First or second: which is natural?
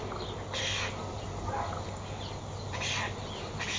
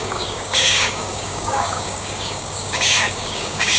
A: first